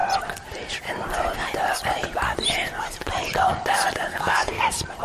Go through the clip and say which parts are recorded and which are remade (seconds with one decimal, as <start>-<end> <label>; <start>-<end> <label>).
0.0-4.1 recorded; 4.1-4.6 remade; 4.6-5.0 recorded